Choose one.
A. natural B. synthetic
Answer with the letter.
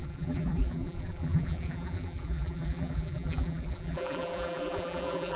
B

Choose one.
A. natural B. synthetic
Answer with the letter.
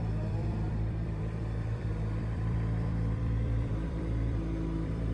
B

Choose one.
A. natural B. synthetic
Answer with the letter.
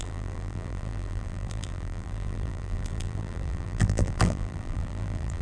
B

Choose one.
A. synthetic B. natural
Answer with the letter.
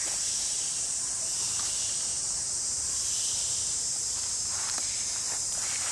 A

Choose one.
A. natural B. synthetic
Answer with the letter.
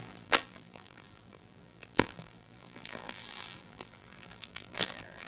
B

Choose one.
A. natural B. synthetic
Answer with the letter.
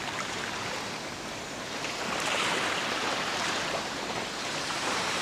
B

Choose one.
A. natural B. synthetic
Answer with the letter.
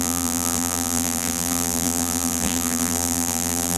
B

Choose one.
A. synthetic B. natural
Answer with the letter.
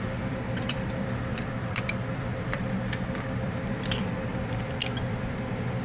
A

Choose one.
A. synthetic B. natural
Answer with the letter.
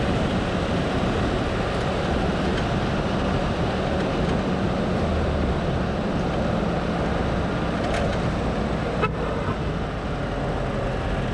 B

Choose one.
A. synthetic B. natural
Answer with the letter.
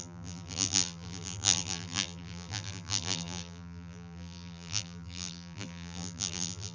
A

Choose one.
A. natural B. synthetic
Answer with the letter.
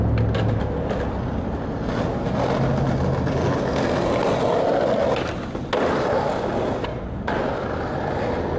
A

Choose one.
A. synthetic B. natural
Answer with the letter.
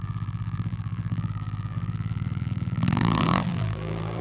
A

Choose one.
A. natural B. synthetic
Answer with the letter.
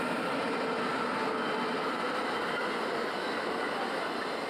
A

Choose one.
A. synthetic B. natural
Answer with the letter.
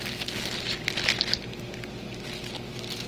B